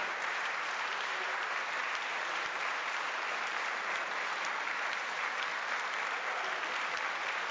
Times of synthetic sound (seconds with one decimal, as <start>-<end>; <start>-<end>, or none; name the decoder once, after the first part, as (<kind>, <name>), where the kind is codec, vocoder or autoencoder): 0.0-5.5 (vocoder, BigVGAN v2)

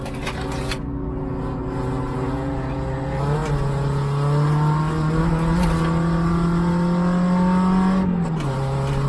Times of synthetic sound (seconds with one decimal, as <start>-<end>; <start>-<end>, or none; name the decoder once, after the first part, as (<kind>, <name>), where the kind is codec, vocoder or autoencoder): none

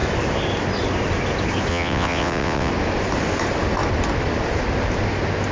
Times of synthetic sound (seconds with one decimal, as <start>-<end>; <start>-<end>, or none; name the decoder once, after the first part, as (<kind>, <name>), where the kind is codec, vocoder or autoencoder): 1.7-2.7 (vocoder, WaveNeXt)

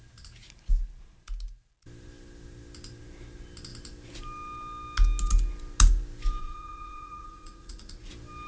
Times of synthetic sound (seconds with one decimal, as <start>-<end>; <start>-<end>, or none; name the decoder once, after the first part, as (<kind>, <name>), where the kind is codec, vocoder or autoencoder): 6.4-8.1 (vocoder, Vocos)

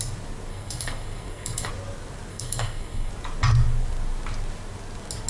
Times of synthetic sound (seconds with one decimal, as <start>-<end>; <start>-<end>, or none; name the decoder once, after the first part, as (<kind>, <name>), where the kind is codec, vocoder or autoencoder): 0.5-1.7 (codec, SNAC); 2.3-3.1